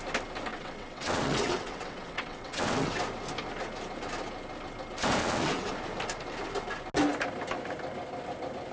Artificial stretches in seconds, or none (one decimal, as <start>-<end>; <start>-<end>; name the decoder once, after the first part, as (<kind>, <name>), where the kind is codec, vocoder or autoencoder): 0.5-3.0 (vocoder, WaveNeXt); 5.2-5.7